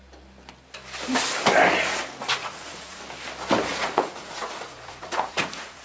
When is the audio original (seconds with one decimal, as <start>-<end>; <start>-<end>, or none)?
0.0-2.4; 3.0-3.7